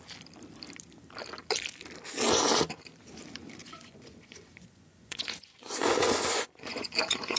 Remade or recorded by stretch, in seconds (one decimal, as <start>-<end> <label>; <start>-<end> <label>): 0.0-3.6 recorded; 3.6-7.4 remade

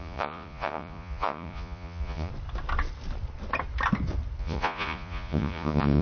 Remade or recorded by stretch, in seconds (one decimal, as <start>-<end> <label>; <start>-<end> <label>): 0.0-2.3 remade; 2.3-4.4 recorded; 4.4-6.0 remade

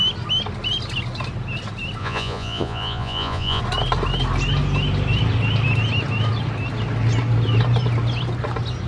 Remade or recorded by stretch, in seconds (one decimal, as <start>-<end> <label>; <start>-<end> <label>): 0.0-2.0 recorded; 2.0-3.6 remade; 3.6-8.9 recorded